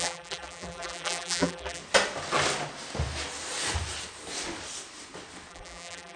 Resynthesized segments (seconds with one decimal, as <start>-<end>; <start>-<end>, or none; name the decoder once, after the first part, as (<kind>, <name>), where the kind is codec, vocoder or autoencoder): 0.0-1.8 (vocoder, BigVGAN v2); 5.5-6.2